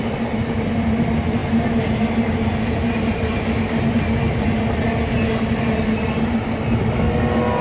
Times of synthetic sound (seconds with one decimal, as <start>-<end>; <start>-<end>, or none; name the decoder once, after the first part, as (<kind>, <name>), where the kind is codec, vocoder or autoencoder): none